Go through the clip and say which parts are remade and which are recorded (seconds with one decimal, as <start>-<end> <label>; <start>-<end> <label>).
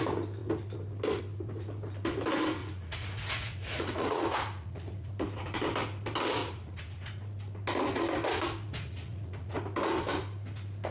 0.0-2.6 recorded; 2.6-5.1 remade; 5.1-6.4 recorded; 6.4-7.2 remade; 7.2-8.7 recorded; 8.7-9.6 remade; 9.6-10.9 recorded